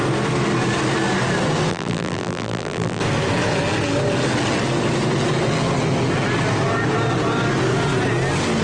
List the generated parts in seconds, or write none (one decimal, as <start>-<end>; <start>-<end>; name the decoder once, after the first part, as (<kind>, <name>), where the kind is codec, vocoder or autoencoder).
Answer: 1.7-3.0 (vocoder, BigVGAN v2)